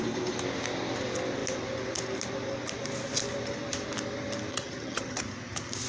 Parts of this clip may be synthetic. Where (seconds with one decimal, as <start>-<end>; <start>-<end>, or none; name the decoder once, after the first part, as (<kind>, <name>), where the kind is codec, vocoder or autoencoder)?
4.5-5.2 (vocoder, HiFi-GAN)